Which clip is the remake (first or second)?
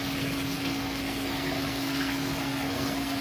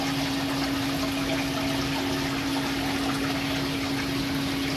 first